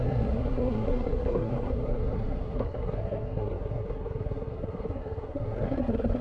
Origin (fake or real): fake